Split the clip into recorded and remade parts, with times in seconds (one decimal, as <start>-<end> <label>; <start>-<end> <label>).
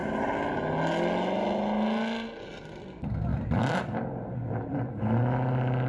0.0-3.3 recorded; 3.3-4.9 remade; 4.9-5.9 recorded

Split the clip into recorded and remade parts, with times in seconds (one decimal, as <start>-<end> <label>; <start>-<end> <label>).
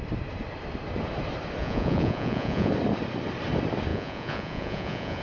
0.0-1.6 recorded; 1.6-2.7 remade; 2.7-3.9 recorded; 3.9-5.2 remade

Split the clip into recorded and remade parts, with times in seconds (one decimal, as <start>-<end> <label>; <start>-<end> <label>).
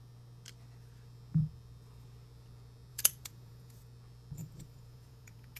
0.0-2.9 recorded; 2.9-3.8 remade; 3.8-4.4 recorded; 4.4-5.6 remade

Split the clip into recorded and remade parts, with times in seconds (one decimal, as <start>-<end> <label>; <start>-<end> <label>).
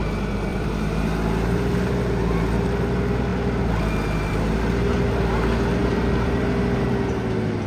0.0-0.5 recorded; 0.5-1.9 remade; 1.9-5.8 recorded; 5.8-6.8 remade; 6.8-7.7 recorded